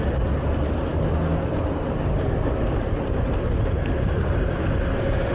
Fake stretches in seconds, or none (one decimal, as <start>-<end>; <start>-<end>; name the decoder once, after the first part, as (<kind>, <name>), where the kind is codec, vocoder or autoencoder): none